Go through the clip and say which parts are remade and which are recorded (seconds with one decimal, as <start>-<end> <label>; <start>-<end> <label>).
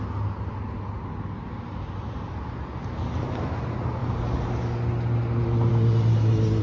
0.0-6.6 recorded